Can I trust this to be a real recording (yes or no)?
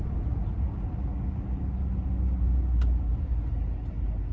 yes